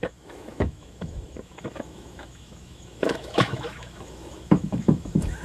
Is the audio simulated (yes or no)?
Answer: yes